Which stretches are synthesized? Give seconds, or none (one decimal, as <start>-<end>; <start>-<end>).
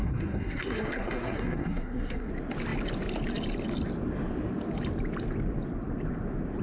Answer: 0.0-2.3